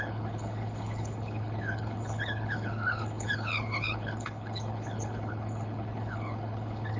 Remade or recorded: remade